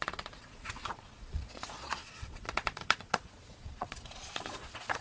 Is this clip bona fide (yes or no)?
no